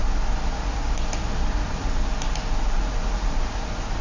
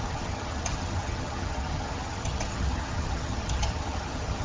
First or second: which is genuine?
first